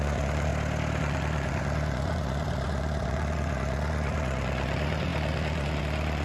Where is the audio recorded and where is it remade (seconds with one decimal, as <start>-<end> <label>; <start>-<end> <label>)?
0.0-0.5 remade; 0.5-1.0 recorded; 1.0-6.2 remade